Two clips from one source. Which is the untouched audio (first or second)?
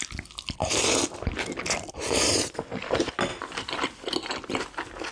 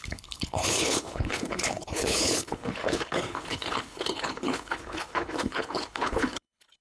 first